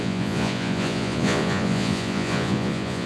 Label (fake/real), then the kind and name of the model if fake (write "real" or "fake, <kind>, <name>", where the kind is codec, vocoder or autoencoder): fake, vocoder, Vocos